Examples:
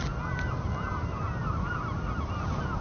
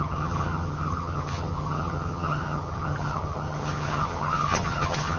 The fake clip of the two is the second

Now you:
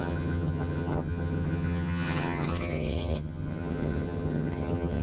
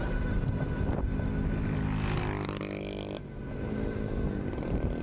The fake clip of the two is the first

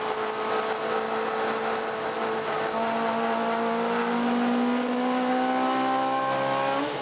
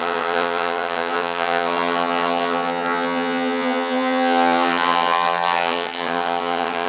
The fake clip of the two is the second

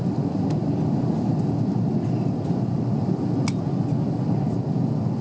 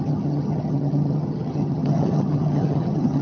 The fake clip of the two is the second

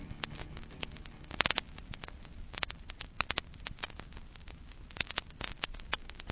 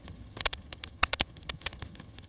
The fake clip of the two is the second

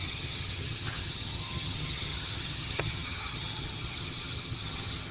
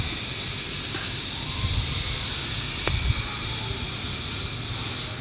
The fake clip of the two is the first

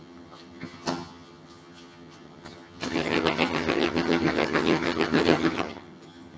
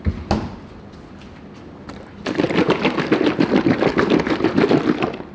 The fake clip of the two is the first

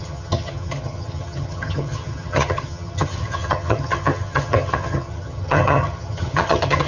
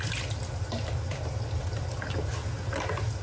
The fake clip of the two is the first